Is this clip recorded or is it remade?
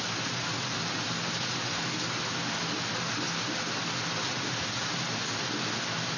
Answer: recorded